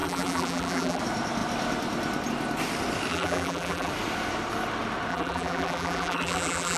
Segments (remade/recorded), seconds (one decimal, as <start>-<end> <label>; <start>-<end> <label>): 0.0-1.0 remade; 1.0-3.1 recorded; 3.1-3.9 remade; 3.9-5.1 recorded; 5.1-6.8 remade